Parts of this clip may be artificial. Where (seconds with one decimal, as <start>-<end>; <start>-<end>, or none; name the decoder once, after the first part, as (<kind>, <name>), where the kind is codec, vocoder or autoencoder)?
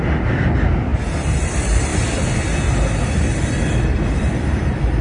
none